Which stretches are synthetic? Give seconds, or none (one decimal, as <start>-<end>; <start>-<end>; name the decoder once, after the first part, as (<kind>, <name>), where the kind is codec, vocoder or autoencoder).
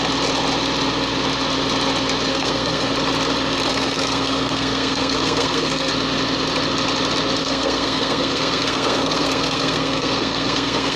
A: 2.3-2.9 (codec, SNAC); 3.7-5.9; 7.4-11.0